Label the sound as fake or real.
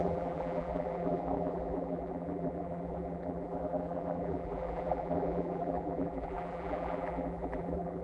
fake